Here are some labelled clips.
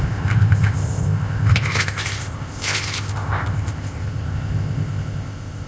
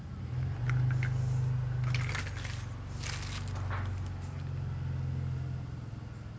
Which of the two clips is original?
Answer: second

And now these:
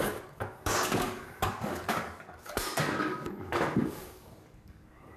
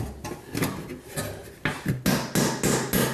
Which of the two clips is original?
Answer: second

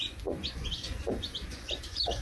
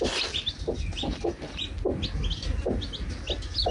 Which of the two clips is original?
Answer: second